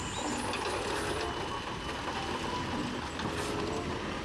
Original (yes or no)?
yes